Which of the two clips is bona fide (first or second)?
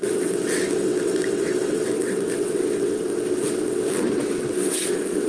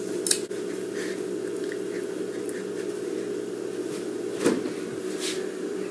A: second